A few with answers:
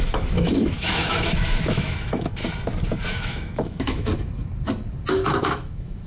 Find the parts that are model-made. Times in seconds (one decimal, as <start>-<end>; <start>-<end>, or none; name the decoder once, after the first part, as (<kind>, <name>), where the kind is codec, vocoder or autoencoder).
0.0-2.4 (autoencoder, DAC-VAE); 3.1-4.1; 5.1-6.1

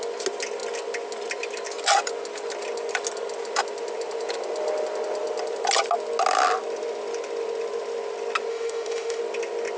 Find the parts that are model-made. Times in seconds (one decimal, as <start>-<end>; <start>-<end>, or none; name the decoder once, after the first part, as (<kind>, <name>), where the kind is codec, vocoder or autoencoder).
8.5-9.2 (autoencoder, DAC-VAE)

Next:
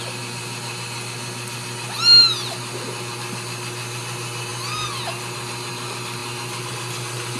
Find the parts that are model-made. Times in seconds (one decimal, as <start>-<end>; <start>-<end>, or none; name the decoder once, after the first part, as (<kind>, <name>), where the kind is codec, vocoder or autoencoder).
none

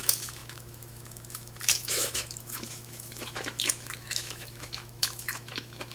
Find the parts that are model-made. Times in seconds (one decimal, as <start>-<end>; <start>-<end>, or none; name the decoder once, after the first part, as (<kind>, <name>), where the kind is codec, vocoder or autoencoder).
0.0-5.9 (autoencoder, DAC-VAE)

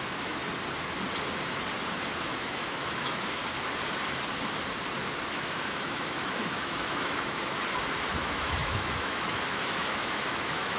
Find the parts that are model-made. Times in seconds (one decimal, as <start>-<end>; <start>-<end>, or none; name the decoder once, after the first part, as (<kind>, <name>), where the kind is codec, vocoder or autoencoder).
0.0-0.4 (autoencoder, DAC-VAE); 2.2-3.4; 5.3-7.6; 8.1-10.8

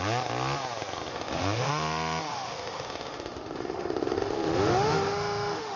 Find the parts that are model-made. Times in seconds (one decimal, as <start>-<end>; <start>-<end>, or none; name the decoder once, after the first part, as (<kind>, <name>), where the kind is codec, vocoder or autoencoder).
1.1-1.7 (autoencoder, DAC-VAE); 2.3-5.8

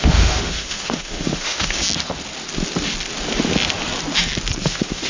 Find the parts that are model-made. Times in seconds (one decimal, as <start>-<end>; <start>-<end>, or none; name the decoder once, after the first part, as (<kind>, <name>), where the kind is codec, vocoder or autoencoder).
0.0-1.8 (autoencoder, DAC-VAE); 4.6-5.1

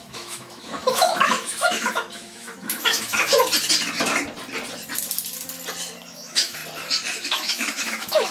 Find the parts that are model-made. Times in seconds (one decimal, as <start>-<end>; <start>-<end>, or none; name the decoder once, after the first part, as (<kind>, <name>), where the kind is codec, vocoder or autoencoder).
0.0-3.5 (autoencoder, DAC-VAE); 6.1-6.6; 7.1-8.3